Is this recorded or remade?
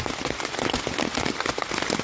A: recorded